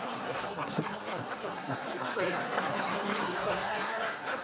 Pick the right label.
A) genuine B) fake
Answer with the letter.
B